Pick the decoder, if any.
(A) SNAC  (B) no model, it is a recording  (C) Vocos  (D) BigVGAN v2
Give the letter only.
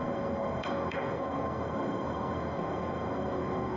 A